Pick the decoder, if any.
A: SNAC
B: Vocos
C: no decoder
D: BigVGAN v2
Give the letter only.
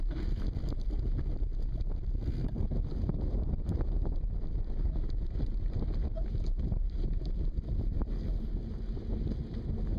C